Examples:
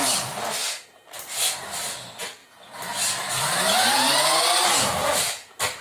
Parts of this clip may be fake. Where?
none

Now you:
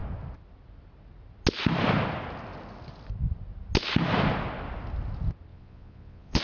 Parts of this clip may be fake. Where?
5.5-6.4 (vocoder, Vocos)

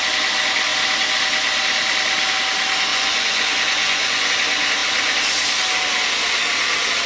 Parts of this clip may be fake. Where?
2.9-4.3 (vocoder, Vocos)